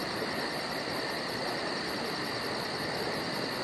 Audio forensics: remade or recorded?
recorded